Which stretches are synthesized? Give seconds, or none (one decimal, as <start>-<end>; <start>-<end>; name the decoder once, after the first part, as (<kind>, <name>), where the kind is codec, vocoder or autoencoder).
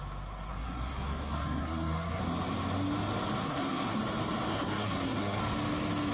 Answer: 0.5-2.2 (codec, SNAC); 3.4-4.0; 4.5-5.4